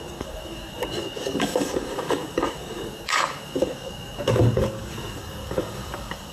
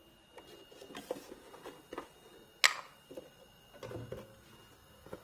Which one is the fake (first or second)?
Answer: first